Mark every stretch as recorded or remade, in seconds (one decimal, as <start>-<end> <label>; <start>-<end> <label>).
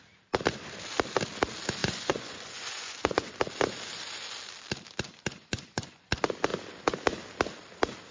0.0-1.8 recorded; 1.8-3.3 remade; 3.3-5.4 recorded; 5.4-6.1 remade; 6.1-8.1 recorded